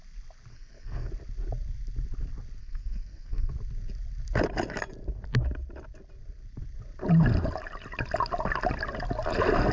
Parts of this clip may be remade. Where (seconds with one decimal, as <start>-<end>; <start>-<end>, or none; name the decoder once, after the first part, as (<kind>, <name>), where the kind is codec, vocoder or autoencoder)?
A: 0.5-1.1 (codec, SNAC); 2.6-3.5